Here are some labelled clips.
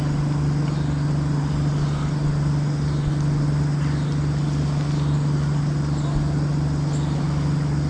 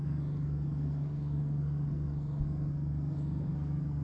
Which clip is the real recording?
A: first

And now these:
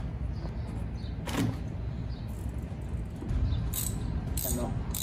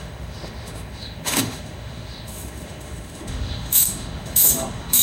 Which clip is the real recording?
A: first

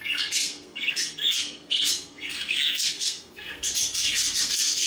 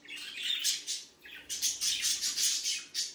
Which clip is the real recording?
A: second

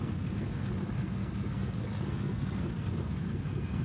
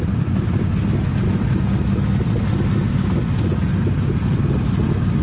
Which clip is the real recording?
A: second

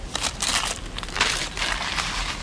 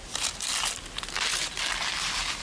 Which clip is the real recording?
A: second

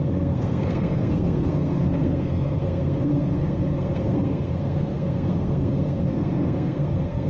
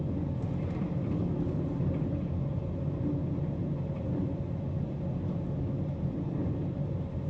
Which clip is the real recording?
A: second